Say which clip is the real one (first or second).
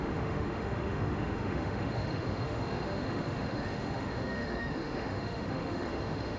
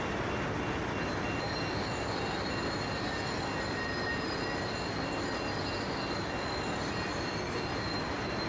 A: second